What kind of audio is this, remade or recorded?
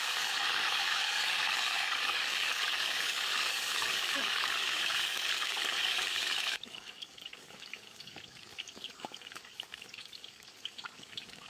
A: remade